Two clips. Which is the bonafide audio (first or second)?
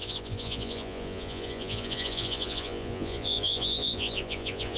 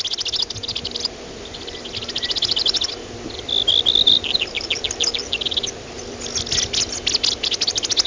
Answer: second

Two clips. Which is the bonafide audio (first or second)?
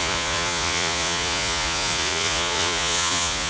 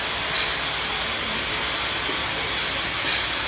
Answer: second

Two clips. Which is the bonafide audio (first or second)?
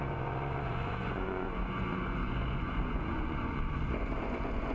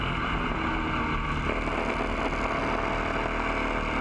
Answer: second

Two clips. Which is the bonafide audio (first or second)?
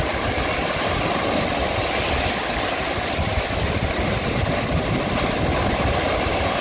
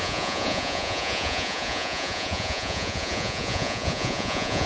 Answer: first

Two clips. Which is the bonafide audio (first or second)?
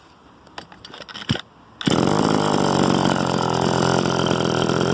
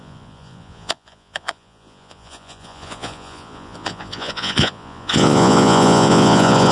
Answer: first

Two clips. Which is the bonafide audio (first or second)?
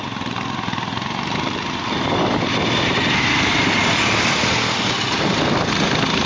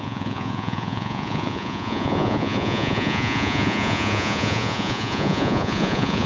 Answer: first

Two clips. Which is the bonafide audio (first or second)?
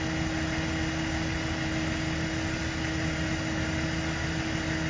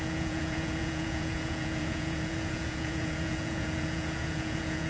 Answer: first